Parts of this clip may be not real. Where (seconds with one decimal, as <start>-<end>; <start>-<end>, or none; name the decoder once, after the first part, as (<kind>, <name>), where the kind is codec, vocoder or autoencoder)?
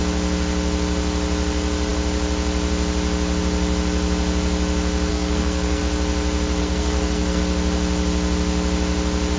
5.1-5.8 (codec, SNAC); 6.6-7.4